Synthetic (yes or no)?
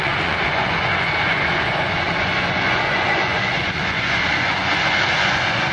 yes